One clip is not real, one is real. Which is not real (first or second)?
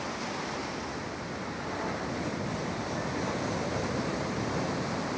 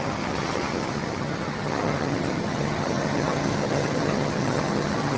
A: second